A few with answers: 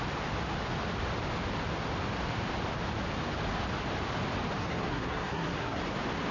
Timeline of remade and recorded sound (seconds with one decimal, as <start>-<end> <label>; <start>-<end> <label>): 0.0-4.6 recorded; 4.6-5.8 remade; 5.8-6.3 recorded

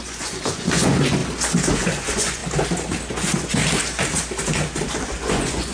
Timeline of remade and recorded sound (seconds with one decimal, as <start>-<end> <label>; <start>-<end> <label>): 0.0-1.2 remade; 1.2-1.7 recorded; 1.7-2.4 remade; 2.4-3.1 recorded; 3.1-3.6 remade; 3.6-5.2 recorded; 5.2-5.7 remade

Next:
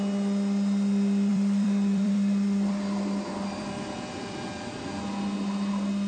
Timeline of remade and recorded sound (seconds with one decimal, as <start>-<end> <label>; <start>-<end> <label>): 0.0-1.3 recorded; 1.3-5.0 remade; 5.0-6.1 recorded